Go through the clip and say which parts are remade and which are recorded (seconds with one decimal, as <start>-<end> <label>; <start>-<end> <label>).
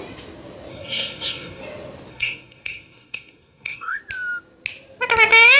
0.0-0.7 recorded; 0.7-1.6 remade; 1.6-2.1 recorded; 2.1-4.0 remade; 4.0-5.6 recorded